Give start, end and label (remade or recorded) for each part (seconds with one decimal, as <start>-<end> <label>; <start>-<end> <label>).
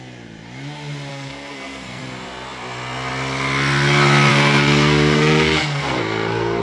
0.0-1.1 recorded; 1.1-2.0 remade; 2.0-4.3 recorded; 4.3-6.6 remade